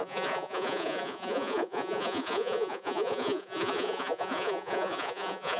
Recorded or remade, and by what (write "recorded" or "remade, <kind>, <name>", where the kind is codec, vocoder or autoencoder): remade, vocoder, Vocos